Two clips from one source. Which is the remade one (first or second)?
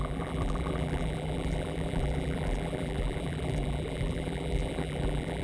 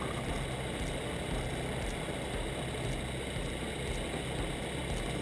first